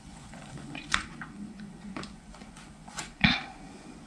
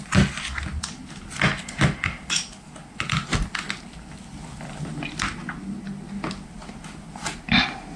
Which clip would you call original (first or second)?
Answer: second